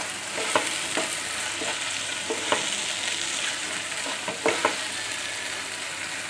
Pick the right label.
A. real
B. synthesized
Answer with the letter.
A